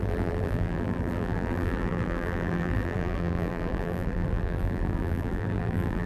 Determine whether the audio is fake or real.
fake